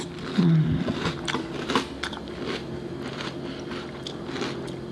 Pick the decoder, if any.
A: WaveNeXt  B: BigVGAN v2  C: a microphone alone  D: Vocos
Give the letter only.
B